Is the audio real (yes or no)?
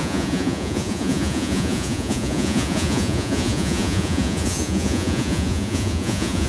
no